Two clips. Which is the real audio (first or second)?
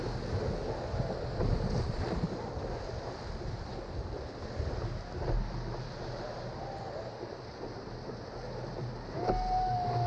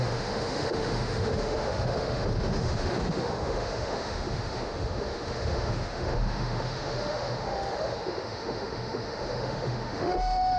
first